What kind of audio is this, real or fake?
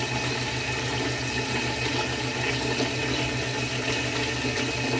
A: real